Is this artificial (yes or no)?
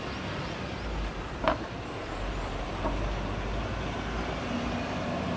no